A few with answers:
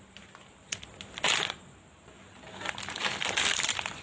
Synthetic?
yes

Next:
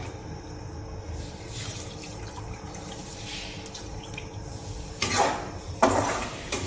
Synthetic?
yes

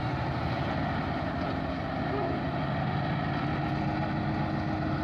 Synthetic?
no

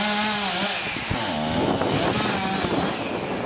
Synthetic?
no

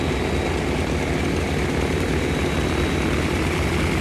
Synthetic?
no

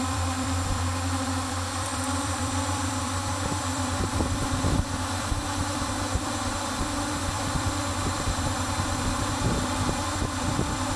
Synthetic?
yes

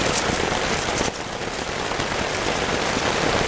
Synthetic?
no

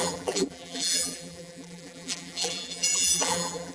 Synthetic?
yes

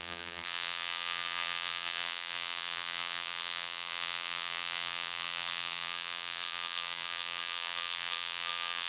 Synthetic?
yes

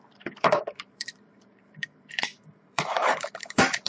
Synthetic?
yes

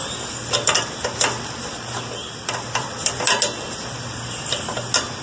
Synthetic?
no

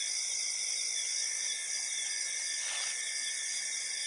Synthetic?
no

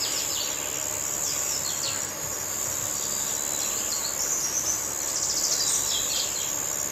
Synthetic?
no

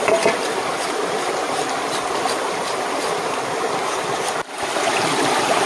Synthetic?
no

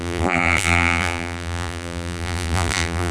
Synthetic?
yes